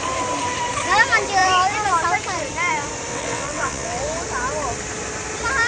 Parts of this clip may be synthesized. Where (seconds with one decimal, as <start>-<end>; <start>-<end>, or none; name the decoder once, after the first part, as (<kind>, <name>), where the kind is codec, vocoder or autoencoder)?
3.1-4.0 (vocoder, WaveNeXt)